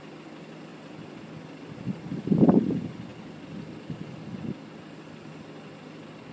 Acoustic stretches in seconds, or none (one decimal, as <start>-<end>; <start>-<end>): 0.0-6.3